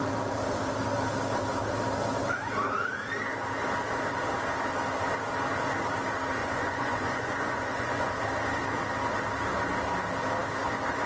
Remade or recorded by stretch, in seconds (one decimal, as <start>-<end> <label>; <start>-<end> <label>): 0.0-6.4 recorded; 6.4-8.1 remade; 8.1-11.1 recorded